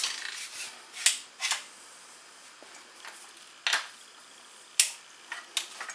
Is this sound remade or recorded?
recorded